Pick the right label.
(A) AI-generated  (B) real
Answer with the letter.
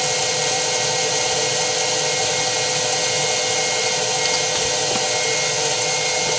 B